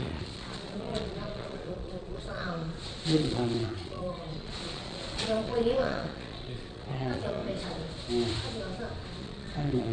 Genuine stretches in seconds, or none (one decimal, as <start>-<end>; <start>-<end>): 7.4-9.2